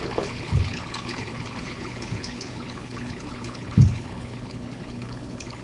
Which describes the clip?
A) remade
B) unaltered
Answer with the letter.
A